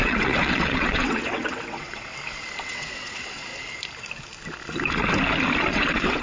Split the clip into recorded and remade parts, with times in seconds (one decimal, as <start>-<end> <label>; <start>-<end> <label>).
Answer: 0.0-2.1 remade; 2.1-2.6 recorded; 2.6-3.5 remade; 3.5-5.7 recorded; 5.7-6.2 remade